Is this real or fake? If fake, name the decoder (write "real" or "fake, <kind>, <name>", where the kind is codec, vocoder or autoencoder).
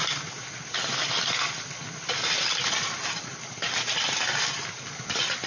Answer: real